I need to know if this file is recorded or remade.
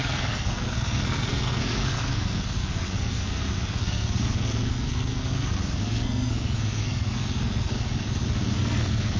remade